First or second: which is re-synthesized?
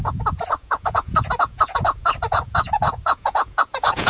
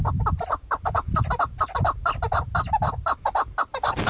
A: first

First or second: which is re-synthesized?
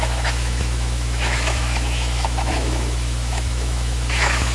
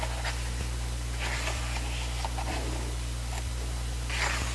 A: first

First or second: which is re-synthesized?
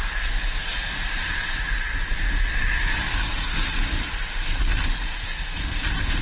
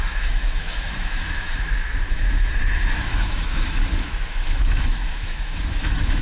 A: second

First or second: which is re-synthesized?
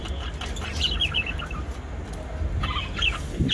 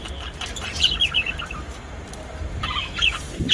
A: second